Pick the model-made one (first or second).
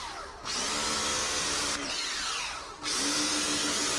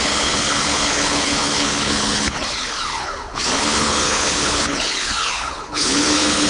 second